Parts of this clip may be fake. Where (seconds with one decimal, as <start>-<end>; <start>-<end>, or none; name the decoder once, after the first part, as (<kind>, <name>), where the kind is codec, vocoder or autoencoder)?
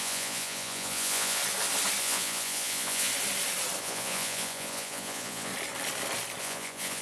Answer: 0.0-1.4 (vocoder, Vocos); 2.0-3.1; 3.8-5.5; 6.4-7.0